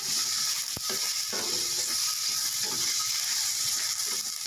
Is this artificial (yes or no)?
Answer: no